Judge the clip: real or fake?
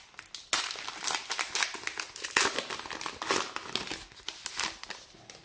real